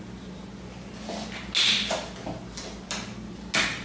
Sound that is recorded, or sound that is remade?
recorded